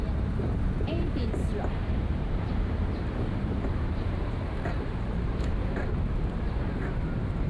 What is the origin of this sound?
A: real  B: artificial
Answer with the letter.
B